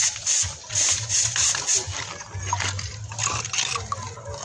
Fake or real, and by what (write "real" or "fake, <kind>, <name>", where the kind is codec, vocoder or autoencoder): real